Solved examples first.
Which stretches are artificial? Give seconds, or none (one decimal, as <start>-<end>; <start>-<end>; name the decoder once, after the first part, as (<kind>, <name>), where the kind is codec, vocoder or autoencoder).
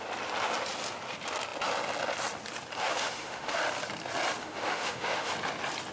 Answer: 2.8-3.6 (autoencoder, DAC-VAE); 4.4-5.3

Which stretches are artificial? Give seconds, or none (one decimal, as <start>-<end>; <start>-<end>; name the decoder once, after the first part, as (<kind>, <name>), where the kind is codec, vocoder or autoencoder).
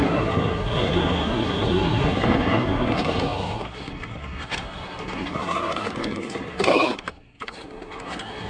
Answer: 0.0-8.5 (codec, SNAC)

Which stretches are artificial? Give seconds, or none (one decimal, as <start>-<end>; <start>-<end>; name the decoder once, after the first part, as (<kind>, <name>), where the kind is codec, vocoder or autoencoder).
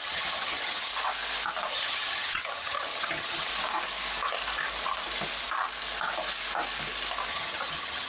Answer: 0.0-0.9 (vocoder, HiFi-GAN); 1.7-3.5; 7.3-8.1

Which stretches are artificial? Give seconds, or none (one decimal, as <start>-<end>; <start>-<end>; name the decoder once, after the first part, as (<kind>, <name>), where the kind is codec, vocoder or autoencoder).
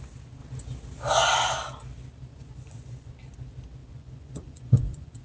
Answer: 2.3-3.1 (vocoder, Vocos); 3.8-5.2